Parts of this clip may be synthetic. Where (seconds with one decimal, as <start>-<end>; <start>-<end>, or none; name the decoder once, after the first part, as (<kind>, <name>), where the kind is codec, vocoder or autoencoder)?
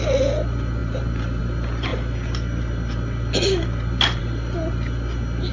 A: 0.8-1.4 (vocoder, BigVGAN v2)